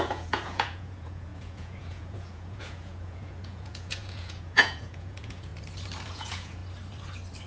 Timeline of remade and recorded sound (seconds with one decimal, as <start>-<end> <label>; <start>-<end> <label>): 0.0-5.5 remade; 5.5-6.1 recorded; 6.1-6.6 remade; 6.6-7.5 recorded